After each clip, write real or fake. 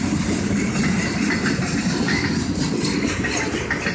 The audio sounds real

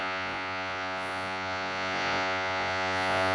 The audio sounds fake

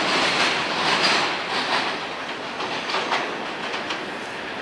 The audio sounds real